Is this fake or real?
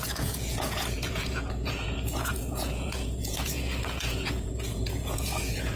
fake